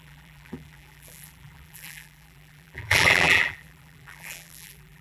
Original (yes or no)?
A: no